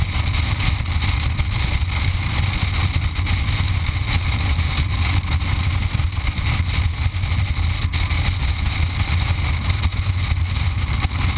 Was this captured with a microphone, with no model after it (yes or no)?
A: yes